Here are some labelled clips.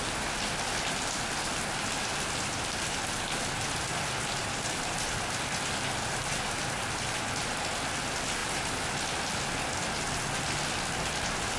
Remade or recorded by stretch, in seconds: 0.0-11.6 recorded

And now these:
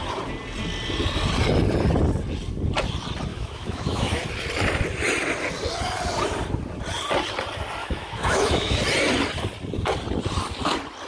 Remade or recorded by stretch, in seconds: 0.0-3.3 recorded; 3.3-4.2 remade; 4.2-7.8 recorded; 7.8-8.8 remade; 8.8-11.1 recorded

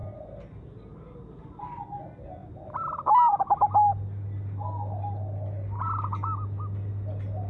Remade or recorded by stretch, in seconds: 0.0-7.5 recorded

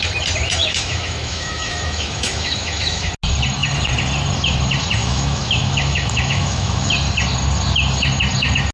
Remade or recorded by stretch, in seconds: 0.0-0.6 recorded; 0.6-3.1 remade; 3.1-5.0 recorded; 5.0-6.9 remade; 6.9-8.7 recorded